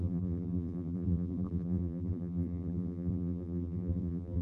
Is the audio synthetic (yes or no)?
yes